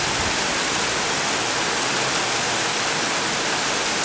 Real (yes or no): yes